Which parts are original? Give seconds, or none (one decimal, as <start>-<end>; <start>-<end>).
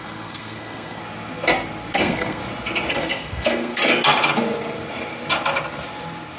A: 1.0-2.0; 2.4-2.9; 3.7-6.4